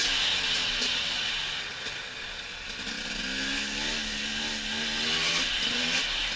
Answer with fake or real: real